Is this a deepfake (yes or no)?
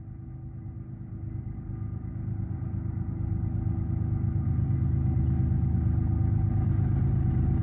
no